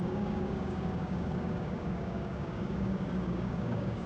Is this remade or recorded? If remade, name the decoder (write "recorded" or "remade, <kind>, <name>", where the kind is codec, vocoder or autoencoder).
remade, codec, DAC